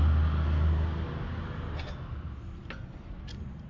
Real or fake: real